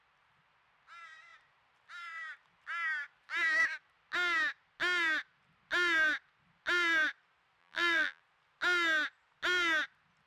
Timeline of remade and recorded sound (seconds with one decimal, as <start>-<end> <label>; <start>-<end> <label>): 0.0-7.6 recorded; 7.6-8.2 remade; 8.2-10.3 recorded